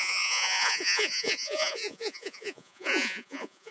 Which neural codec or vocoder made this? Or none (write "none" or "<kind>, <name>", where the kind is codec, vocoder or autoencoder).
vocoder, Vocos